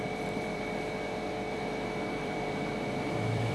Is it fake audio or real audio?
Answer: fake